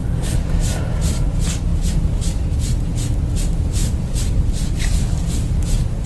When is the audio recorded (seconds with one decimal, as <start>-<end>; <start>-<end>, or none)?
0.8-3.8; 5.0-6.1